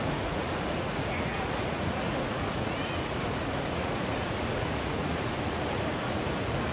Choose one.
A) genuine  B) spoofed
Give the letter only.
B